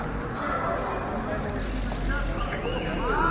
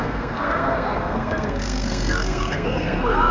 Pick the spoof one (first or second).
second